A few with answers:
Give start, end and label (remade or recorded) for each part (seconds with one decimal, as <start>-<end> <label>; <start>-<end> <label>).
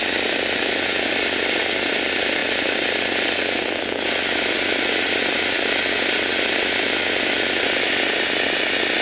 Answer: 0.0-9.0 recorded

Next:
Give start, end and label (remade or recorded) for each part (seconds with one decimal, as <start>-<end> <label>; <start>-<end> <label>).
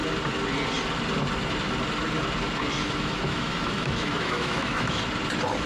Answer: 0.0-2.8 recorded; 2.8-5.0 remade; 5.0-5.7 recorded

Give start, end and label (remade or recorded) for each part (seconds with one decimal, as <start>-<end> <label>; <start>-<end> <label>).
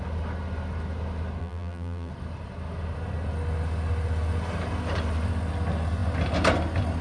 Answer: 0.0-1.4 recorded; 1.4-2.1 remade; 2.1-7.0 recorded